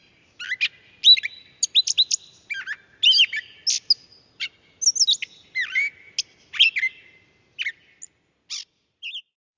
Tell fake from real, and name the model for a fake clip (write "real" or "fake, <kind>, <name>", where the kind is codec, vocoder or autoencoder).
real